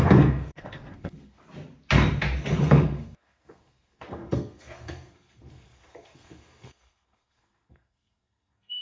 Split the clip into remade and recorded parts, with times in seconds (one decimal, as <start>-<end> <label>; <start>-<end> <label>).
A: 0.0-1.4 remade; 1.4-2.6 recorded; 2.6-8.8 remade